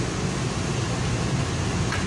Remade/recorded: recorded